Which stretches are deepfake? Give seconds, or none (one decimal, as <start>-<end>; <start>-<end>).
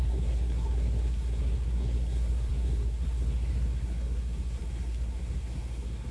0.0-6.1